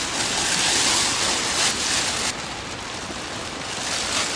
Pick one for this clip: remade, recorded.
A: recorded